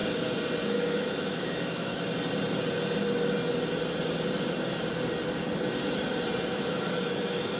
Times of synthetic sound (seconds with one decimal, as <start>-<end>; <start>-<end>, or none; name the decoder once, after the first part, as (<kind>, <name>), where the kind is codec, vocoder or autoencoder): 0.7-1.9 (autoencoder, DAC-VAE); 6.5-7.6

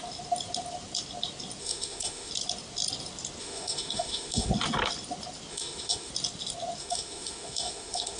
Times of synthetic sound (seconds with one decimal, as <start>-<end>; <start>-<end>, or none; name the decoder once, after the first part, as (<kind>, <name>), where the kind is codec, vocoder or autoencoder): 1.6-2.3 (autoencoder, DAC-VAE); 3.4-4.5; 5.5-6.1; 6.8-8.2

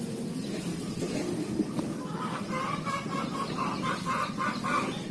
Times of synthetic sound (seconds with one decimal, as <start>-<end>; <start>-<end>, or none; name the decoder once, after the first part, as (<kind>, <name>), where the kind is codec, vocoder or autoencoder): none

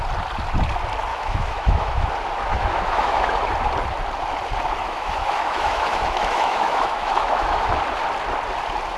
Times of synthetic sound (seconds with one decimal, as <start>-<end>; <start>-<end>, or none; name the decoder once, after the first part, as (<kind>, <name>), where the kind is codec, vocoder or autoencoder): 1.1-2.1 (autoencoder, DAC-VAE); 2.5-3.3; 4.8-7.8

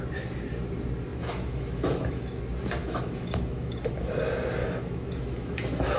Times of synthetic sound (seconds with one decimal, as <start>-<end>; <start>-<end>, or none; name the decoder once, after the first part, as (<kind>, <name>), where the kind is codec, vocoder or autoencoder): 1.1-2.4 (autoencoder, DAC-VAE); 2.8-4.1; 4.6-6.0

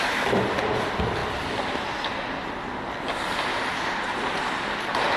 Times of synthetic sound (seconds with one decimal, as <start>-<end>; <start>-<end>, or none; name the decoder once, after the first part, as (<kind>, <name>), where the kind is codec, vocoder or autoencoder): none

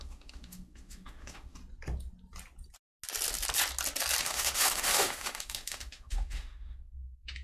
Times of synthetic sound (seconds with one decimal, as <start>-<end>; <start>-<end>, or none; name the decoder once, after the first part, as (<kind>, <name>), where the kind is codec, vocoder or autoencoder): 0.0-1.6 (autoencoder, DAC-VAE); 4.2-7.4